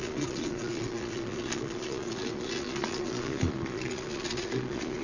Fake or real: fake